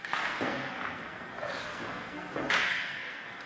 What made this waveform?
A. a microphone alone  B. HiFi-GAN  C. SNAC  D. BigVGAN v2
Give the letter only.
C